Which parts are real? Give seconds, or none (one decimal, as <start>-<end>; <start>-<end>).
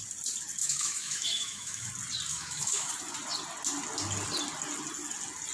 0.0-0.6; 1.9-2.3; 2.9-5.5